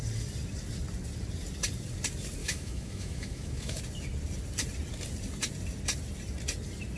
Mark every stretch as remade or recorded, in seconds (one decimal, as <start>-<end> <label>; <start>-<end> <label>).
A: 0.0-2.4 recorded; 2.4-3.8 remade; 3.8-7.0 recorded